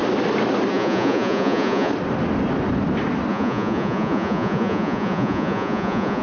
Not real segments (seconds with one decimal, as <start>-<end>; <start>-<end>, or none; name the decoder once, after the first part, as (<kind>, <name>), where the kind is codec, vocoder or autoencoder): 0.7-1.9 (vocoder, Vocos); 3.3-6.2